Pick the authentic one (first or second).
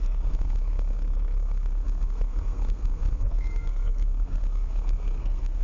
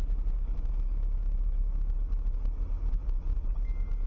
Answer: second